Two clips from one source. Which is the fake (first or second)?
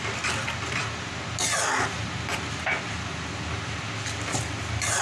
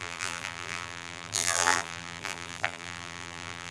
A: second